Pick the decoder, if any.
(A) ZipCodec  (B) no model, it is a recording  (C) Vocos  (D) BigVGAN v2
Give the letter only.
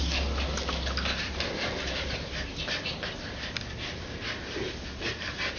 B